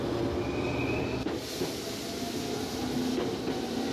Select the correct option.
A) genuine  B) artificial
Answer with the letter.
A